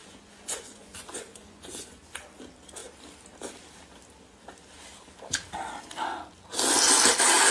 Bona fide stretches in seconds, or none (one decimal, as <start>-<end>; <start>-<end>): 2.0-7.5